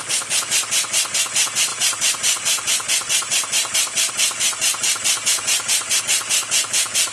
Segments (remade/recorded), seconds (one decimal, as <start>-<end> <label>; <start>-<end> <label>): 0.0-1.7 recorded; 1.7-6.0 remade; 6.0-7.1 recorded

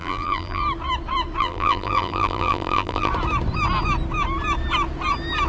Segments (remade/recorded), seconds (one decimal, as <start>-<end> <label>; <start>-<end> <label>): 0.0-0.6 remade; 0.6-1.4 recorded; 1.4-3.1 remade; 3.1-5.5 recorded